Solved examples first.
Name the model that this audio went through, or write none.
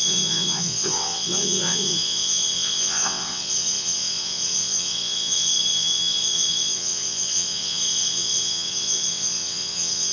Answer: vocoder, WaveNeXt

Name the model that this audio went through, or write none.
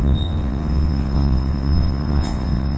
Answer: vocoder, WaveNeXt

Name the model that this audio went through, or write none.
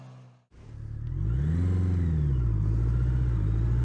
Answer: none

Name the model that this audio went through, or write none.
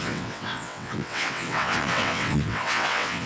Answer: vocoder, WaveNeXt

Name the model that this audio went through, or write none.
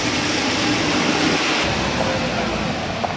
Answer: none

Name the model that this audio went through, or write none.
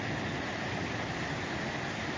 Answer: none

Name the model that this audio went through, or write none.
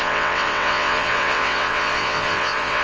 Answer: vocoder, WaveNeXt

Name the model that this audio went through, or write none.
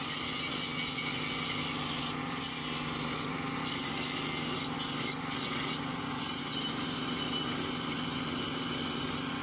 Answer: none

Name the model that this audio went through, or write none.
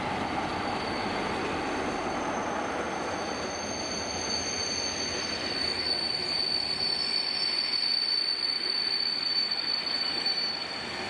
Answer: none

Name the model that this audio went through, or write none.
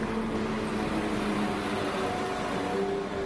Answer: none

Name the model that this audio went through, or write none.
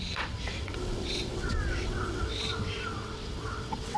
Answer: vocoder, WaveNeXt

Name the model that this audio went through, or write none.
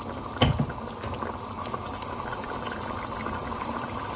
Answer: none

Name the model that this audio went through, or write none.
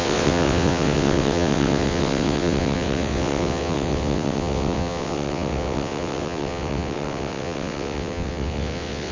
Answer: vocoder, WaveNeXt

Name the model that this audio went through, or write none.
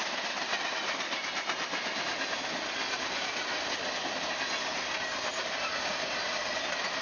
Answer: none